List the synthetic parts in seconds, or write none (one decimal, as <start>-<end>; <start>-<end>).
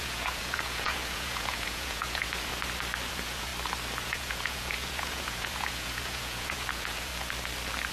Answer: 0.0-2.5; 3.1-3.5; 4.0-7.1